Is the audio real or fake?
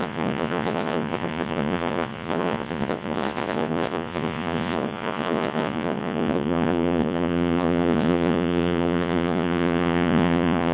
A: fake